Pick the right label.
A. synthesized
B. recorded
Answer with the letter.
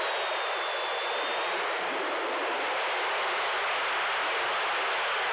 B